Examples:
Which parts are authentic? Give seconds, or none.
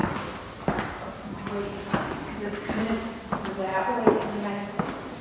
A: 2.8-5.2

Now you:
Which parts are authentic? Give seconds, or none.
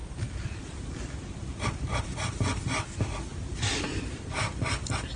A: 2.4-5.2